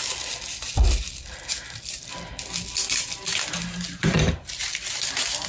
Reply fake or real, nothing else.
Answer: real